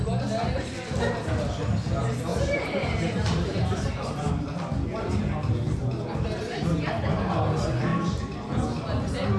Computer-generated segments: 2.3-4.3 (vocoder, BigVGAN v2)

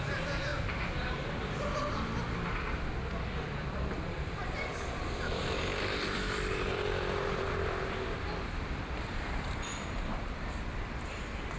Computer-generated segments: 0.0-0.5 (vocoder, BigVGAN v2); 2.8-11.6

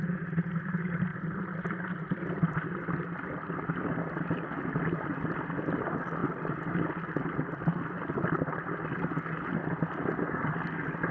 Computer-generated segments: 1.1-3.9 (vocoder, BigVGAN v2); 6.2-9.2

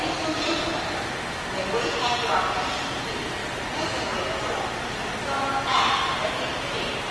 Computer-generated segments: none